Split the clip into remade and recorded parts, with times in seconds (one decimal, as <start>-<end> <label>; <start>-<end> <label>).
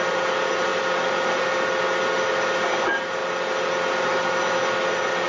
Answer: 0.0-5.3 recorded